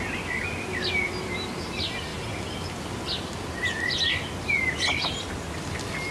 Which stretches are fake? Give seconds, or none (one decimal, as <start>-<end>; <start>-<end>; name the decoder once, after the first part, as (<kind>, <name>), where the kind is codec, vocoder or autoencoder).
none